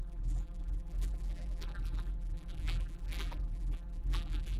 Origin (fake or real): fake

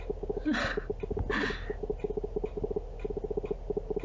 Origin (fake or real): real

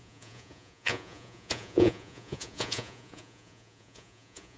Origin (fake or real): fake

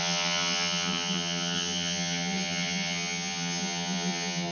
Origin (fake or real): fake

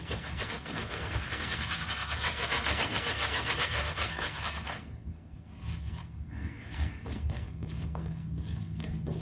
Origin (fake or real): fake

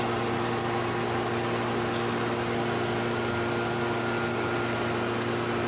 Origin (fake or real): real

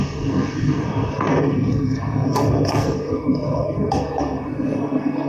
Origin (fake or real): fake